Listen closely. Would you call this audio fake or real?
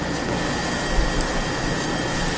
real